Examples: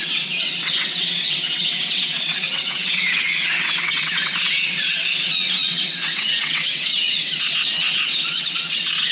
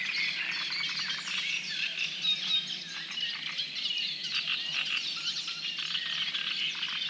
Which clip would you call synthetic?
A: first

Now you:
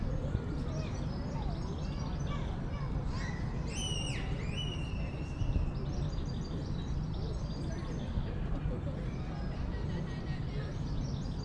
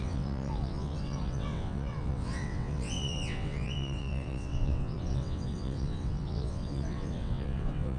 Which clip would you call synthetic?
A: second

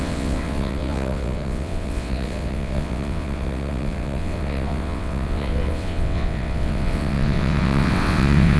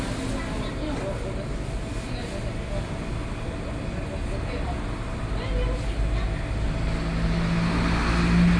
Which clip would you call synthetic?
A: first